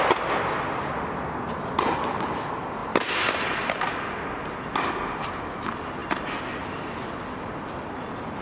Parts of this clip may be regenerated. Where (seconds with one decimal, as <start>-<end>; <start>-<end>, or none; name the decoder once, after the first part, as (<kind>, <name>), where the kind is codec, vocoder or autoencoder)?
none